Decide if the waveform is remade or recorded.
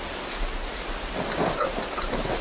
recorded